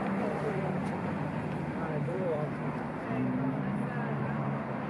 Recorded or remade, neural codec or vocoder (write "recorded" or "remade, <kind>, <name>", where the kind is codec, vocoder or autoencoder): remade, vocoder, BigVGAN v2